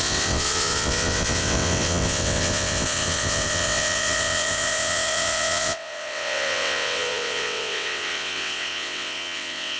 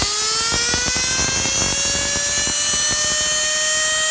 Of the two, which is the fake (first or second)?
first